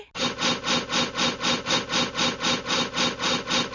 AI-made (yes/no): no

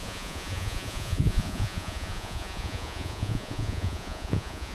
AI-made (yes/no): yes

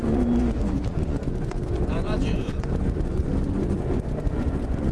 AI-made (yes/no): yes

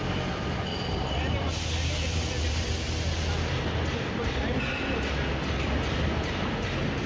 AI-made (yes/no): no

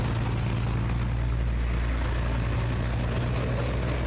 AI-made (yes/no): no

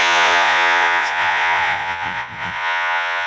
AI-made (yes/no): yes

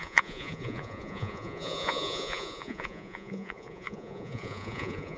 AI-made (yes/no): yes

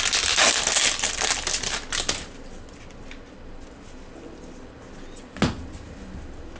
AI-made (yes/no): no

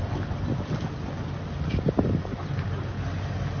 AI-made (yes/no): no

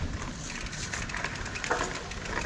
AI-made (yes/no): no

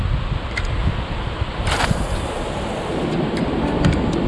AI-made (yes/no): no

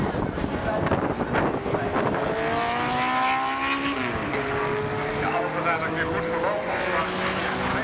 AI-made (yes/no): no